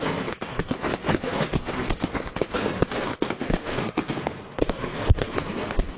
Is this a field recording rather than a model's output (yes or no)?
no